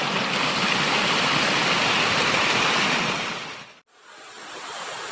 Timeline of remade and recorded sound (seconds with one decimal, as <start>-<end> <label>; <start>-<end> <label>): 0.0-5.1 recorded